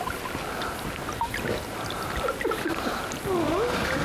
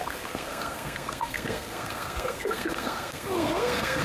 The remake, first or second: second